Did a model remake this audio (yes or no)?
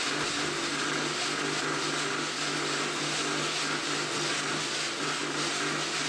no